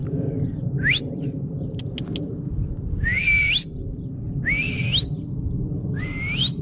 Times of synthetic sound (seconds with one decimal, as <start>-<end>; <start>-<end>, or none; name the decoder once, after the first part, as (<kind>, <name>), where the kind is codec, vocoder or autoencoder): none